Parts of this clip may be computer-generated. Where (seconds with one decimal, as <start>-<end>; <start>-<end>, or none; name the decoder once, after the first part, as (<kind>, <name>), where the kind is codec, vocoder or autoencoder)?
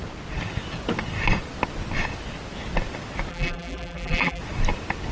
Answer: 3.3-4.4 (vocoder, BigVGAN v2)